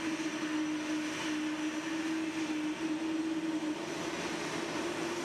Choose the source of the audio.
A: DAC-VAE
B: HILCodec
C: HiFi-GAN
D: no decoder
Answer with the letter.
D